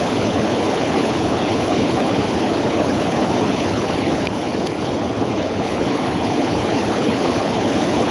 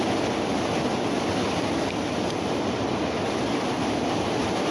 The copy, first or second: first